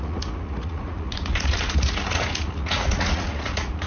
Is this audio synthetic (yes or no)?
yes